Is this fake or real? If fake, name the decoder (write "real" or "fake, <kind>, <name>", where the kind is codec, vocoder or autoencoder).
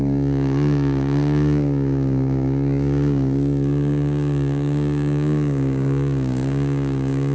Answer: fake, codec, DAC